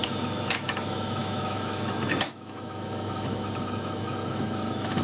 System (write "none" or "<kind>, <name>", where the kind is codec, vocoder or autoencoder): autoencoder, DAC-VAE